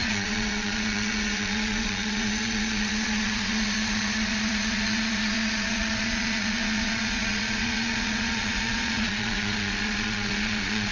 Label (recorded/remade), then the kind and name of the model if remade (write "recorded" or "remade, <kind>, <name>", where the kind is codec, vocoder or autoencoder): remade, vocoder, Vocos